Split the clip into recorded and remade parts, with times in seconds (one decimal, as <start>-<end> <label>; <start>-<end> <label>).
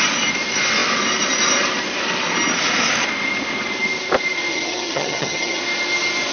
0.0-4.5 recorded; 4.5-5.6 remade; 5.6-6.3 recorded